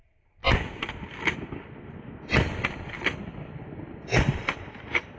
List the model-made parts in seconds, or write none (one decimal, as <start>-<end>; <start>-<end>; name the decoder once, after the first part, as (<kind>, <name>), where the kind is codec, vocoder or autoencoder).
none